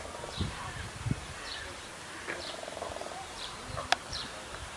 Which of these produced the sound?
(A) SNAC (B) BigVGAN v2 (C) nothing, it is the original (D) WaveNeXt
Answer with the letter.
B